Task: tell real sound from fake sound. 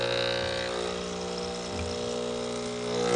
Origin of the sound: real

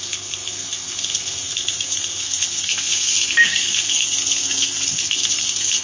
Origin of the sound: fake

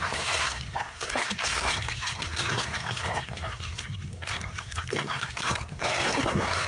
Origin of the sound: fake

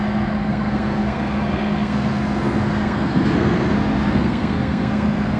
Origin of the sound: fake